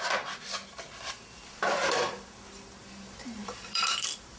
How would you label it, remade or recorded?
remade